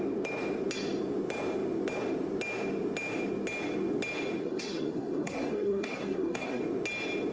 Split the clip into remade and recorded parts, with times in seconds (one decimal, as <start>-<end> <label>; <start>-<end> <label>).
0.0-4.4 recorded; 4.4-6.6 remade; 6.6-7.3 recorded